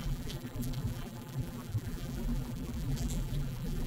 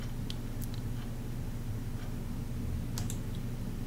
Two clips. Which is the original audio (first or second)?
second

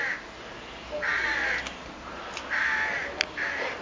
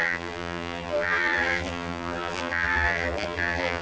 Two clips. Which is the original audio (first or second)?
first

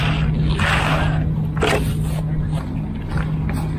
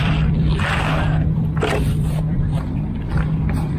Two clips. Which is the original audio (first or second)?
first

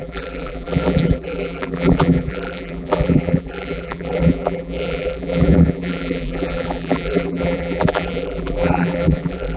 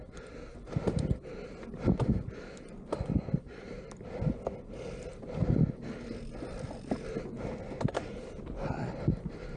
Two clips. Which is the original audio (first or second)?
second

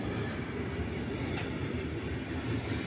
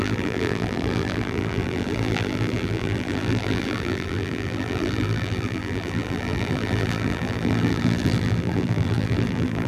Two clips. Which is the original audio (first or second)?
first